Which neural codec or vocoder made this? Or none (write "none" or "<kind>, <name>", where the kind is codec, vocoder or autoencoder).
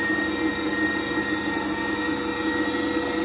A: none